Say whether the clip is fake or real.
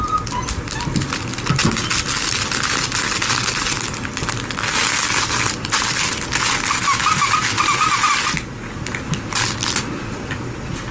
real